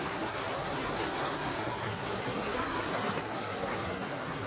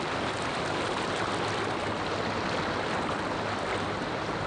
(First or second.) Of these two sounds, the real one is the second